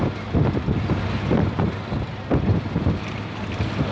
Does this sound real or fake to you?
real